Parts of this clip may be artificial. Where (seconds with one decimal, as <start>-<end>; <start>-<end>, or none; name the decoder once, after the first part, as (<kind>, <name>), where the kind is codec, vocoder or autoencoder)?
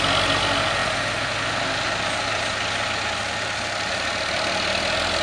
none